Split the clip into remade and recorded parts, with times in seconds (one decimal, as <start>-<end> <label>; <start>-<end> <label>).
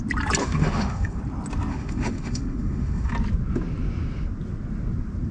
0.0-0.4 recorded; 0.4-1.2 remade; 1.2-1.7 recorded; 1.7-3.1 remade; 3.1-5.3 recorded